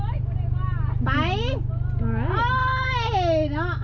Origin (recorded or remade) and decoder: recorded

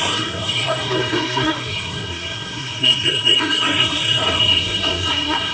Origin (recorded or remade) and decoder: remade, codec, SNAC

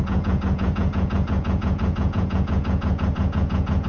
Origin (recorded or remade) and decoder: remade, vocoder, Vocos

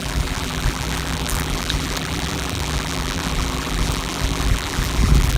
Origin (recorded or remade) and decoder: remade, vocoder, BigVGAN v2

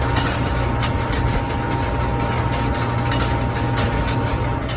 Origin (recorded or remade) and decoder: recorded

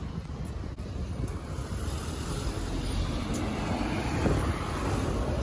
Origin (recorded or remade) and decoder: recorded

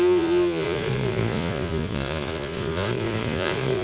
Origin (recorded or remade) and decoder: remade, vocoder, Vocos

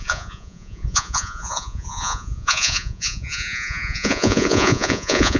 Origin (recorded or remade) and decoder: remade, vocoder, Vocos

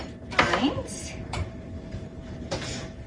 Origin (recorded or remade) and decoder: remade, vocoder, BigVGAN v2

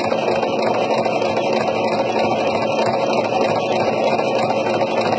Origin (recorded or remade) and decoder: recorded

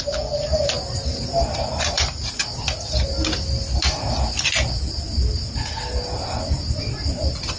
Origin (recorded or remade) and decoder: recorded